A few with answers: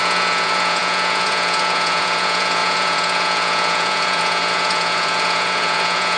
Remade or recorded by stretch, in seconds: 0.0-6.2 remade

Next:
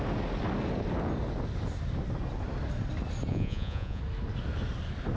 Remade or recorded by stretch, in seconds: 0.0-3.3 recorded; 3.3-4.0 remade; 4.0-5.2 recorded

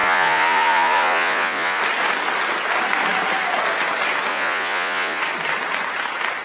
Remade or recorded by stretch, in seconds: 0.0-1.8 remade; 1.8-4.3 recorded; 4.3-5.2 remade; 5.2-6.4 recorded

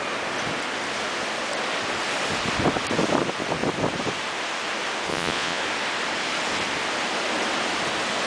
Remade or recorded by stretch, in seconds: 0.0-5.1 recorded; 5.1-5.6 remade; 5.6-8.3 recorded

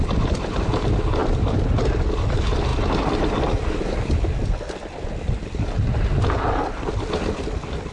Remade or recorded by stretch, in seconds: 0.0-7.9 recorded

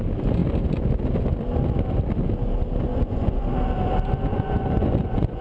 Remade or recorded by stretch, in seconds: 0.0-2.9 recorded; 2.9-3.4 remade; 3.4-4.3 recorded; 4.3-5.4 remade

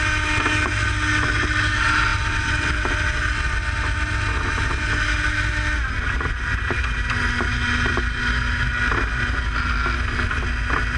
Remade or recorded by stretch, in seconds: 0.0-11.0 recorded